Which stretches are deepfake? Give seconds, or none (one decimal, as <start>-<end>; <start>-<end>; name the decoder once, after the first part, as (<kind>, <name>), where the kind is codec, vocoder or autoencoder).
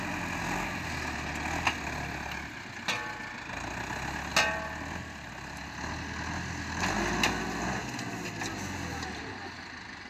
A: none